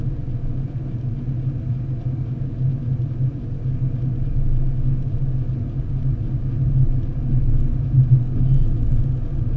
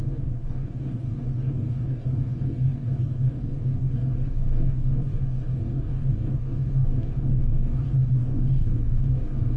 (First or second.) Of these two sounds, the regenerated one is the second